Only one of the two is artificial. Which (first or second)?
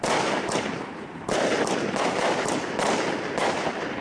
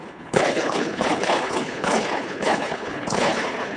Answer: second